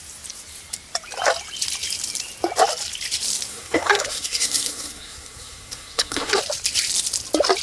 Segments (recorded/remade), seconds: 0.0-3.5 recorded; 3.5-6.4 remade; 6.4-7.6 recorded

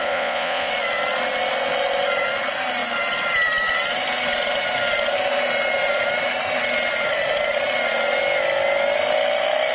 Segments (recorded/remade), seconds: 0.0-0.7 remade; 0.7-9.7 recorded

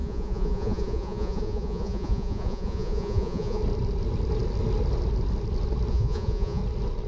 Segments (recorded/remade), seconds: 0.0-3.6 remade; 3.6-5.9 recorded; 5.9-6.6 remade; 6.6-7.1 recorded

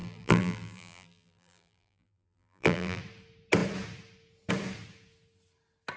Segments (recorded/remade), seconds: 0.0-3.0 remade; 3.0-6.0 recorded

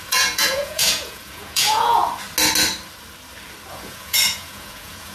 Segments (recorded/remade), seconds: 0.0-2.0 remade; 2.0-3.7 recorded; 3.7-5.1 remade

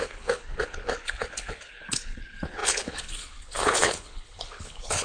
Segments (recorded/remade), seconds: 0.0-5.0 remade

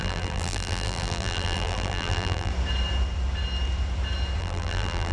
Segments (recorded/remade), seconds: 0.0-2.5 remade; 2.5-4.4 recorded; 4.4-5.1 remade

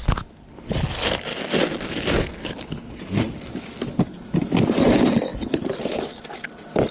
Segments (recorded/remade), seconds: 0.0-2.4 recorded; 2.4-3.0 remade; 3.0-6.9 recorded